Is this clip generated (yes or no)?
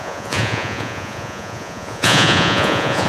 yes